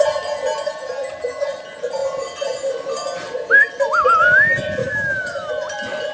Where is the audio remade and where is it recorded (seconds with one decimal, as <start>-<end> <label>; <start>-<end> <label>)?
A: 0.0-4.8 recorded; 4.8-5.5 remade; 5.5-6.1 recorded